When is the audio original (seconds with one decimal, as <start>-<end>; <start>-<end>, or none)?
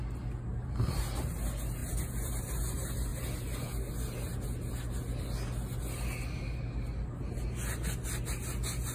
0.0-0.5; 1.0-8.9